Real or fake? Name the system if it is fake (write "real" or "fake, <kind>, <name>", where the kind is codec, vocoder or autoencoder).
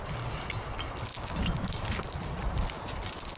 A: real